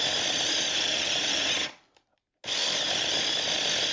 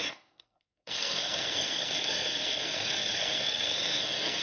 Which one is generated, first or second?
second